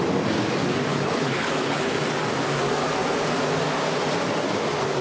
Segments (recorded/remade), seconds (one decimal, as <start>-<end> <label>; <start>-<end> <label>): 0.0-0.9 recorded; 0.9-1.9 remade; 1.9-5.0 recorded